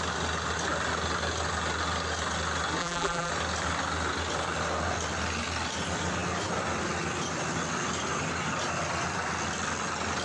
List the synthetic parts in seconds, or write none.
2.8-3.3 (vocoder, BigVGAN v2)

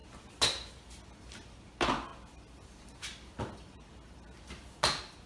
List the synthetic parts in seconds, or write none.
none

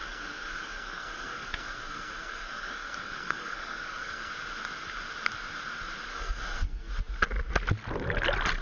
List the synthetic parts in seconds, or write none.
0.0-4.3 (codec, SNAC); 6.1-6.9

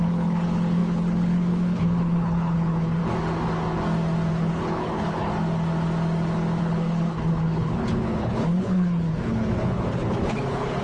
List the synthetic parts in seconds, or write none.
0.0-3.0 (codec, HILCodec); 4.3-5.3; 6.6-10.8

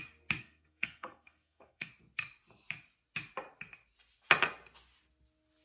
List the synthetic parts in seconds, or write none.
0.4-1.9 (codec, SNAC)

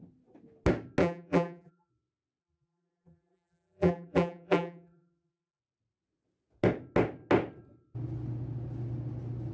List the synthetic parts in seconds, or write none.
1.0-1.9 (vocoder, BigVGAN v2); 2.4-5.6